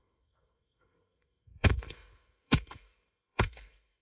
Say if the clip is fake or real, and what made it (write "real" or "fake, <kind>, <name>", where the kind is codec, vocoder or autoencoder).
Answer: fake, codec, SNAC